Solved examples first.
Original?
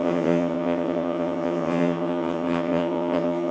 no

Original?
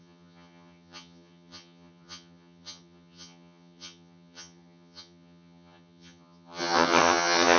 no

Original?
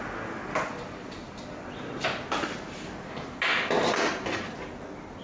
yes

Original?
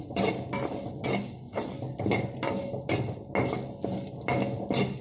yes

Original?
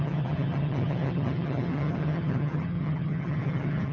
no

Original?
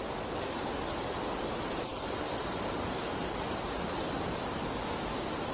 yes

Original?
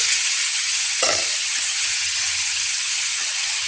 no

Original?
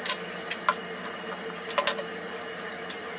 yes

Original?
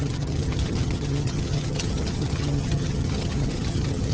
no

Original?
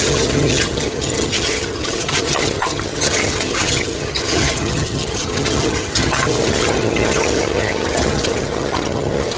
no